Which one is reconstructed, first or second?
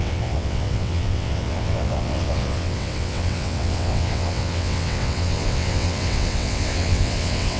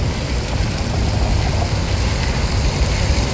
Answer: first